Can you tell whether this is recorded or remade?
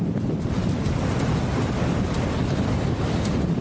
recorded